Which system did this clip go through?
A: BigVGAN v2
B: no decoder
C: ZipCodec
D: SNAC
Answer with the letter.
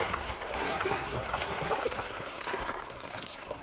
D